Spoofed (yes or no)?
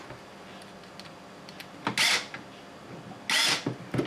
no